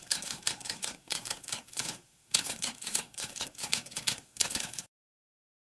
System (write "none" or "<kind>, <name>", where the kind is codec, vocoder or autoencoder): codec, SNAC